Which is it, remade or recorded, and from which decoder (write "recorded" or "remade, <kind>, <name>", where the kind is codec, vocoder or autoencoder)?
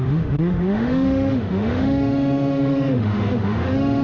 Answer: remade, autoencoder, DAC-VAE